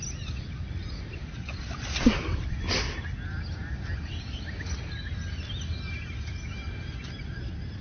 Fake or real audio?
real